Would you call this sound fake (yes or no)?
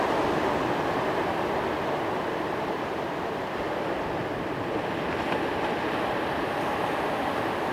no